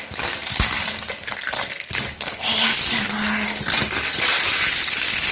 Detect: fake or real real